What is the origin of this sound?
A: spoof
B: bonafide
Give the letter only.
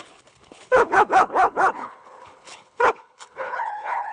A